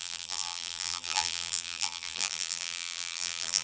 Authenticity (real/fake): fake